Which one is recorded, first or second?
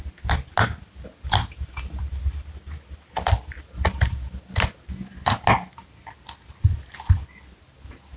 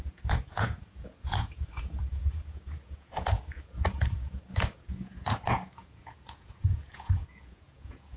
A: first